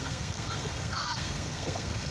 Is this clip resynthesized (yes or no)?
yes